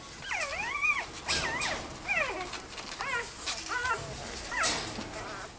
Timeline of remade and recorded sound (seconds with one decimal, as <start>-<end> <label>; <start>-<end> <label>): 0.0-5.6 recorded